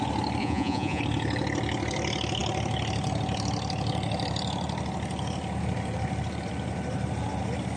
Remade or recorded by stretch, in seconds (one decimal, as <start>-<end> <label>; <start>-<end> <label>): 0.0-0.4 recorded; 0.4-1.0 remade; 1.0-7.8 recorded